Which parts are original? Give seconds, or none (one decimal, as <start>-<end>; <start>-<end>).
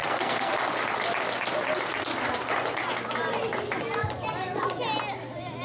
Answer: 0.5-5.6